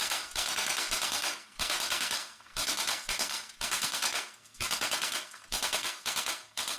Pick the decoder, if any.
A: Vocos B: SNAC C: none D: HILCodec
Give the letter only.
B